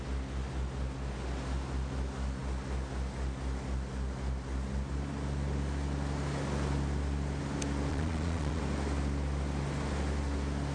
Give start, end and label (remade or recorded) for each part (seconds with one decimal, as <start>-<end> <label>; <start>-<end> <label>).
0.0-7.9 recorded; 7.9-8.6 remade; 8.6-10.7 recorded